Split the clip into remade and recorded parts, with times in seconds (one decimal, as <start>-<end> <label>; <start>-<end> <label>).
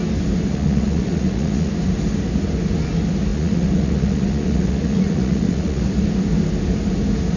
0.0-0.5 recorded; 0.5-1.7 remade; 1.7-3.3 recorded; 3.3-5.8 remade; 5.8-7.4 recorded